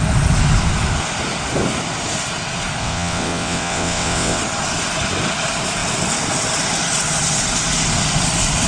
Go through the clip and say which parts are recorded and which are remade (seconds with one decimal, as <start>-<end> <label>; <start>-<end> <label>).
0.0-2.8 recorded; 2.8-4.4 remade; 4.4-8.7 recorded